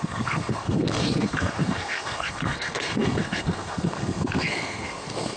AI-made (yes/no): yes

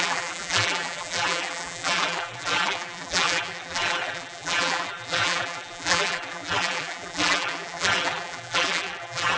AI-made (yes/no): yes